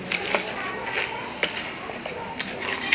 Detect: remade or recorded recorded